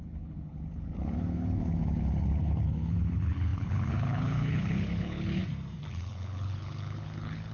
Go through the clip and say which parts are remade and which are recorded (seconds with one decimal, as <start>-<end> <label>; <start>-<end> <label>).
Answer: 0.0-5.4 remade; 5.4-5.9 recorded; 5.9-7.5 remade